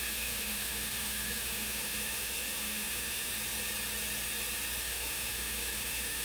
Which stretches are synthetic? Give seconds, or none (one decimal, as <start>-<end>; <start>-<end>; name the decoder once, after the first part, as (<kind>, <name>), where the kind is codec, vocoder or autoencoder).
0.0-3.3 (autoencoder, DAC-VAE); 4.8-6.2